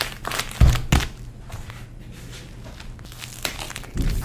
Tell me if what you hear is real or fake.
real